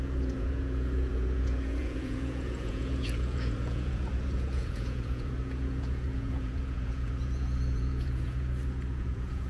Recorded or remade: remade